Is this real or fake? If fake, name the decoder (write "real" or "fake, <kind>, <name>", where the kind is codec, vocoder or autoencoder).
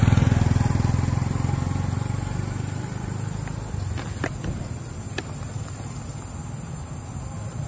real